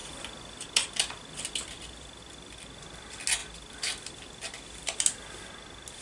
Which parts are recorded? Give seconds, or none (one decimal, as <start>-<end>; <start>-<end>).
0.0-6.0